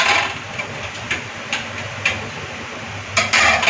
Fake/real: real